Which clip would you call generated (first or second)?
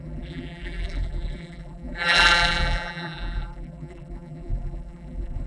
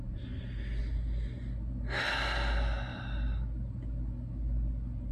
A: first